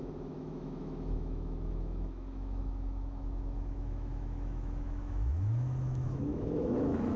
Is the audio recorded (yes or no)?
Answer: no